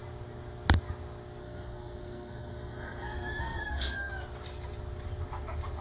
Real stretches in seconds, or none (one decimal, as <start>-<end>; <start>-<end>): 0.0-1.4; 4.1-5.8